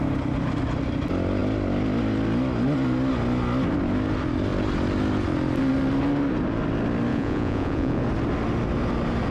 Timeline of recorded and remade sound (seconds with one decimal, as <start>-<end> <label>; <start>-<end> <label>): 0.0-7.1 recorded; 7.1-8.0 remade; 8.0-9.3 recorded